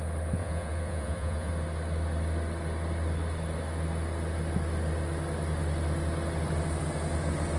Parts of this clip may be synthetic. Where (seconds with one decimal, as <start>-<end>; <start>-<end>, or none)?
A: 0.4-1.5